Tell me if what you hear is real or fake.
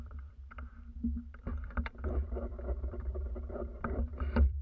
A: fake